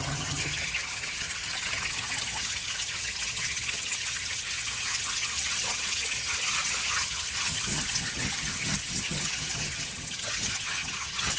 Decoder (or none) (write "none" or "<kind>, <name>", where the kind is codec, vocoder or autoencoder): vocoder, HiFi-GAN